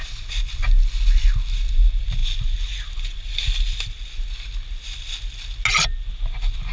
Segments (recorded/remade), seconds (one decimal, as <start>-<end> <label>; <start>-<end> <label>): 0.0-6.7 recorded